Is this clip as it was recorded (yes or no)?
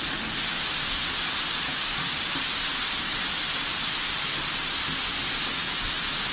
yes